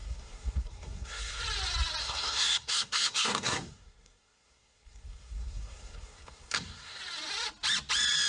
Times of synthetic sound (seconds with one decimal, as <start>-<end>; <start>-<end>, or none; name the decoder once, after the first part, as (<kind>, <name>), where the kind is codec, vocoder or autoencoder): 0.0-1.4 (codec, SNAC); 2.0-7.0